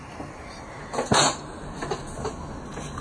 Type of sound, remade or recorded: recorded